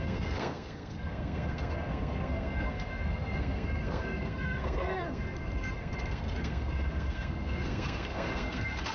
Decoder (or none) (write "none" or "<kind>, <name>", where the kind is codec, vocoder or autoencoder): codec, SNAC